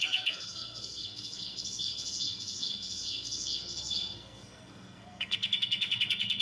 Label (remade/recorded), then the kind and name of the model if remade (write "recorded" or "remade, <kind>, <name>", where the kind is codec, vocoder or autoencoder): remade, codec, SNAC